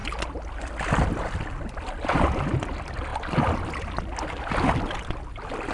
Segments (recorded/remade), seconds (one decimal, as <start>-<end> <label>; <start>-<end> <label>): 0.0-5.7 recorded